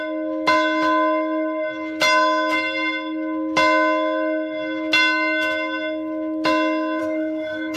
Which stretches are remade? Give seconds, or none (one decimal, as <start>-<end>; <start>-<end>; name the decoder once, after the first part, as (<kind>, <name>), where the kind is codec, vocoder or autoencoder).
7.0-7.8 (codec, SNAC)